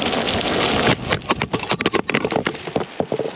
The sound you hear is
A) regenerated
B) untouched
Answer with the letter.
B